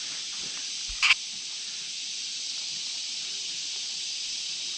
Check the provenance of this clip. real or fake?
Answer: real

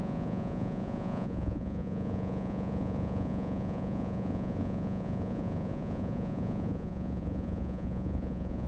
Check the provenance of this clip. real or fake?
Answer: fake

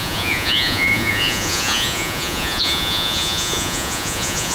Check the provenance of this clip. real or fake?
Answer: fake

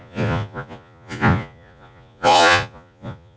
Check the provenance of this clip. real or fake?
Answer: fake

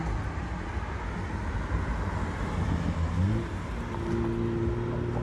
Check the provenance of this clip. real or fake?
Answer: real